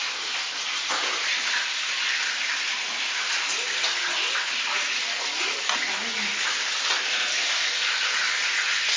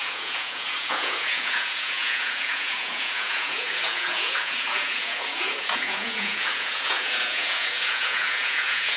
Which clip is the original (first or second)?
first